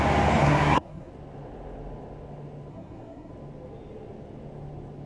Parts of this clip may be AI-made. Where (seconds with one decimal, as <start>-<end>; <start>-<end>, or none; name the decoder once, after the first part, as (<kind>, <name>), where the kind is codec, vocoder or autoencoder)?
0.4-1.1 (codec, SNAC); 2.7-3.3